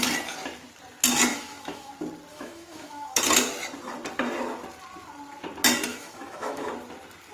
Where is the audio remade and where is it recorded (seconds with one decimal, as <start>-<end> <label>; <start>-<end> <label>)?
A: 0.0-1.3 recorded; 1.3-1.9 remade; 1.9-2.3 recorded; 2.3-3.2 remade; 3.2-5.9 recorded; 5.9-6.7 remade; 6.7-7.3 recorded